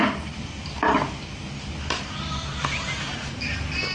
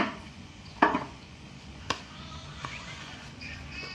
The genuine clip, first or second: first